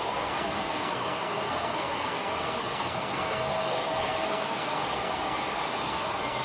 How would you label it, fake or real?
fake